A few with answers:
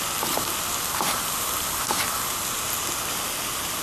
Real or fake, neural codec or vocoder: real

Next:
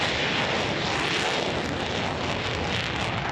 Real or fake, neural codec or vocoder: real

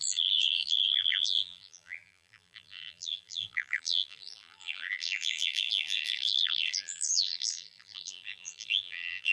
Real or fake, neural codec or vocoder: fake, vocoder, BigVGAN v2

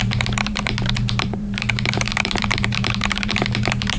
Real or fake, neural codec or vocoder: fake, vocoder, BigVGAN v2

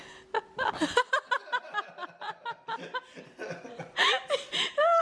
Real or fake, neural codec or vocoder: real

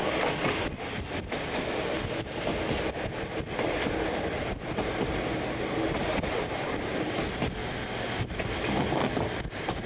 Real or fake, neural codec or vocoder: real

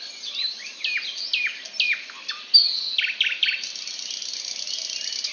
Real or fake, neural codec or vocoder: real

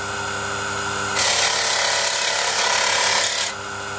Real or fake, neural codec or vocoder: real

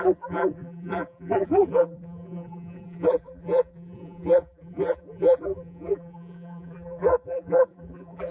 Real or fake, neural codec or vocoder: fake, vocoder, BigVGAN v2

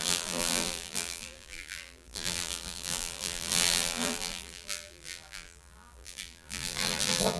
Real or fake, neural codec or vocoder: fake, vocoder, BigVGAN v2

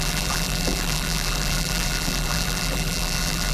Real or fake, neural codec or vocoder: fake, vocoder, BigVGAN v2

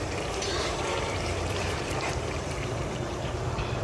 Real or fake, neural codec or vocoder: fake, vocoder, BigVGAN v2